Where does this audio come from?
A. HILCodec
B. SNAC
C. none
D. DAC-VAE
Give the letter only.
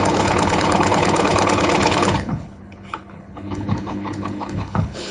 A